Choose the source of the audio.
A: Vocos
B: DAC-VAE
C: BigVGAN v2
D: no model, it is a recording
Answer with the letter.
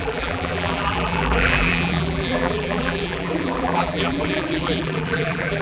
C